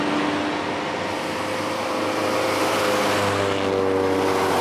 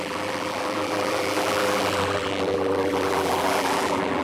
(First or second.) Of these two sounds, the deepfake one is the second